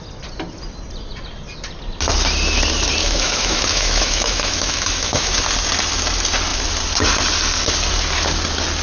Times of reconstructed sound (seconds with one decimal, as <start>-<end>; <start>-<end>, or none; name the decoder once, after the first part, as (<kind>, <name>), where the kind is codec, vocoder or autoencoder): 3.0-5.4 (autoencoder, DAC-VAE)